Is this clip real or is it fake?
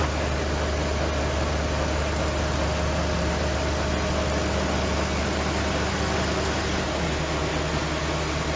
real